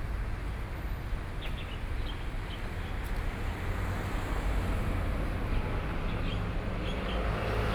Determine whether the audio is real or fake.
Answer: real